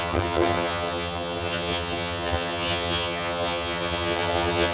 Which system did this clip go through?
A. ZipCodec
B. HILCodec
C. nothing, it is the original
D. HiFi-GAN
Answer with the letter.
D